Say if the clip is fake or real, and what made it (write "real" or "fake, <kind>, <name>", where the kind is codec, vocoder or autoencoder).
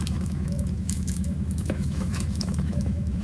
fake, autoencoder, DAC-VAE